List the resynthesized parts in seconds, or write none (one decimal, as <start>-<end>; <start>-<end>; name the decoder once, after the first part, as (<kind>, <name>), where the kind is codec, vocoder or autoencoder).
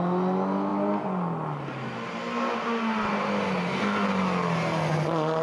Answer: none